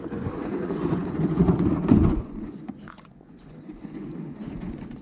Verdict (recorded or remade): remade